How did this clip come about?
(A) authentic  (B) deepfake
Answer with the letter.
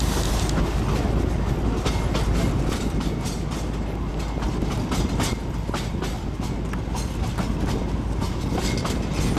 A